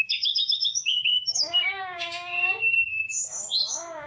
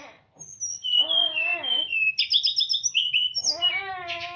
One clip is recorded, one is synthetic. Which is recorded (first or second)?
second